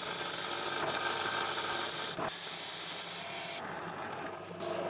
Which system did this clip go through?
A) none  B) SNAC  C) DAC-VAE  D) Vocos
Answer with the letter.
A